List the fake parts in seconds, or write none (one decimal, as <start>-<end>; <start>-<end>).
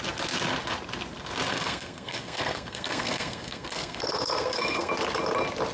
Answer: 1.5-4.9